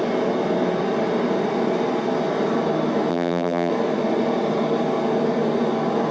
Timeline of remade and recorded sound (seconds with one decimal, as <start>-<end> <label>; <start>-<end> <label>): 0.0-3.1 recorded; 3.1-3.7 remade; 3.7-6.1 recorded